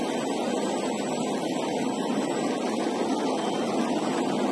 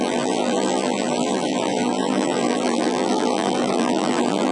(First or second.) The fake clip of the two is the second